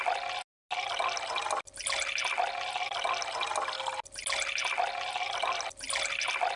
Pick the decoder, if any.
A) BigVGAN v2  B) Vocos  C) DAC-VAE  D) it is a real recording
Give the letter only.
D